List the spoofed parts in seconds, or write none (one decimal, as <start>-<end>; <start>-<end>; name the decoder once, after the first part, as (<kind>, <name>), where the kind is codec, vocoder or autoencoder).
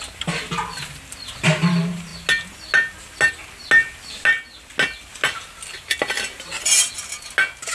none